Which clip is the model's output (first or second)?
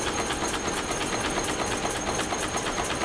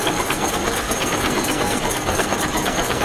second